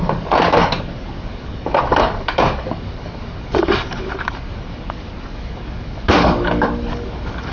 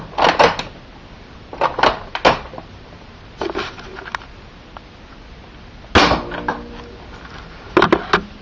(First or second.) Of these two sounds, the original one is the second